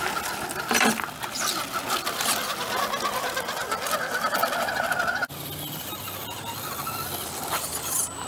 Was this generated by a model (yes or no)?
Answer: no